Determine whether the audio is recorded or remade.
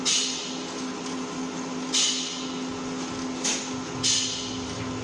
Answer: recorded